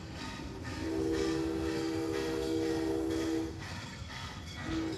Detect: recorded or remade remade